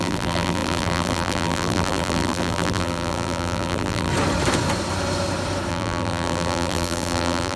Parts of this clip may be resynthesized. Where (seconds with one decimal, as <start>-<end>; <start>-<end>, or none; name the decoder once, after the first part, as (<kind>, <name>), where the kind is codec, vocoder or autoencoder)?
0.0-4.1 (vocoder, BigVGAN v2); 5.7-7.6